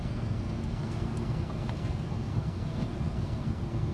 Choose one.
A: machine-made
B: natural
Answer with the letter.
A